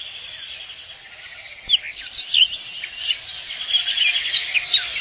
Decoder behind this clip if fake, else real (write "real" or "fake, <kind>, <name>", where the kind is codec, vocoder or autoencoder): real